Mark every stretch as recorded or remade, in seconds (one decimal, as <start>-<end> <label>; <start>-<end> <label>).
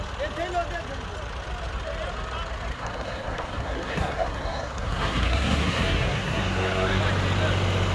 0.0-2.7 recorded; 2.7-7.0 remade; 7.0-7.9 recorded